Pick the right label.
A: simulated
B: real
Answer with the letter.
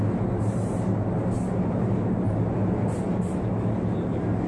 B